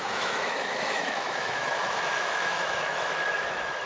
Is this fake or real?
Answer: fake